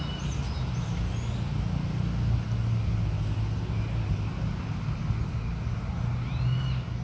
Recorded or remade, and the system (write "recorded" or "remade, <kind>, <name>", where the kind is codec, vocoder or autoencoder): recorded